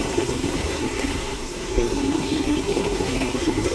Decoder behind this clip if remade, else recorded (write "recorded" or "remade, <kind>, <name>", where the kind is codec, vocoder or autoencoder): remade, codec, SNAC